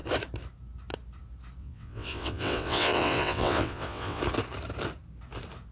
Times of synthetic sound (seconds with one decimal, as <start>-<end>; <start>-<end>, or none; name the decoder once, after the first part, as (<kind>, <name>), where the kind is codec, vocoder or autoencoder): 1.6-4.2 (vocoder, WaveNeXt)